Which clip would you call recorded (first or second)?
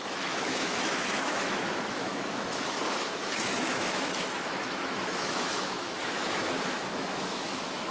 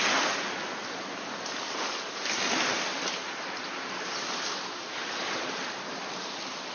second